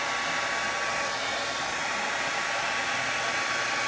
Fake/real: real